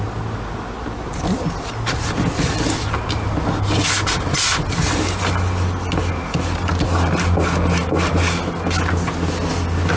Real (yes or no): yes